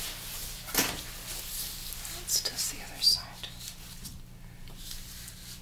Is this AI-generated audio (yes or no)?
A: no